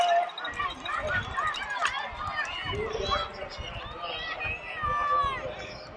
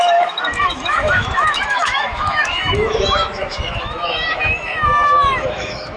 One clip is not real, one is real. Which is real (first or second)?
first